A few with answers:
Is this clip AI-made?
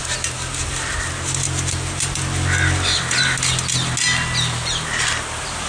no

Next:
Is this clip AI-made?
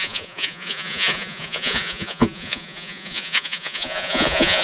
yes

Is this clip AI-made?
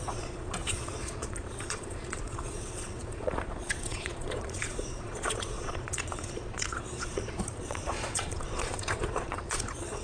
yes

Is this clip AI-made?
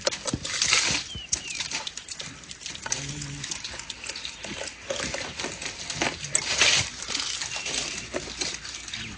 no